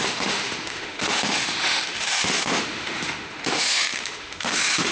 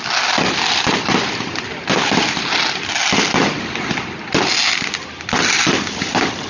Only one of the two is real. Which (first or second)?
second